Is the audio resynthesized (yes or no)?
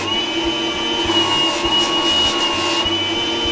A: no